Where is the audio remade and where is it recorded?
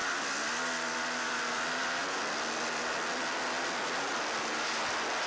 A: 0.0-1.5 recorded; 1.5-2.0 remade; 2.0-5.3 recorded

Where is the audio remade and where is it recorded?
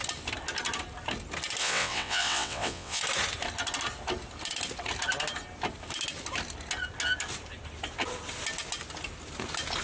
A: 0.0-1.6 recorded; 1.6-3.0 remade; 3.0-9.8 recorded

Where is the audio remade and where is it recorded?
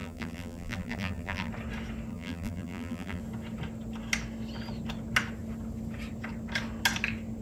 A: 0.0-1.5 remade; 1.5-2.1 recorded; 2.1-3.2 remade; 3.2-7.4 recorded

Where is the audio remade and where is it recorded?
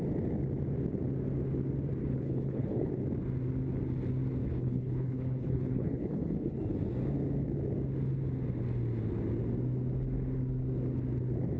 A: 0.0-2.0 recorded; 2.0-2.9 remade; 2.9-4.4 recorded; 4.4-6.6 remade; 6.6-11.6 recorded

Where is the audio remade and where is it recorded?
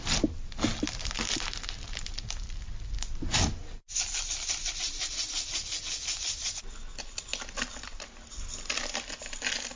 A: 0.0-9.8 recorded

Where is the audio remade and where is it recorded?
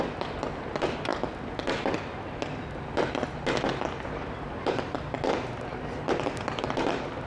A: 0.0-7.3 recorded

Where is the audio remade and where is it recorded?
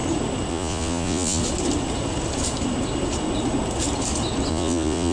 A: 0.0-0.5 recorded; 0.5-1.4 remade; 1.4-4.5 recorded; 4.5-5.1 remade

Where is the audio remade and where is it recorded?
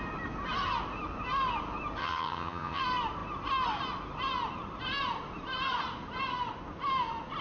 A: 0.0-2.0 recorded; 2.0-2.8 remade; 2.8-7.4 recorded